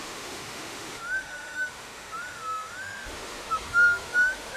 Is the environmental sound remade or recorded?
remade